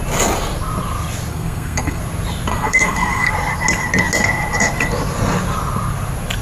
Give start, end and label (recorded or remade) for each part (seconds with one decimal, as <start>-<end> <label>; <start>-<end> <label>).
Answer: 0.0-1.3 recorded; 1.3-2.0 remade; 2.0-2.5 recorded; 2.5-3.3 remade; 3.3-6.4 recorded